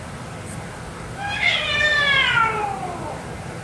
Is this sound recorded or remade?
recorded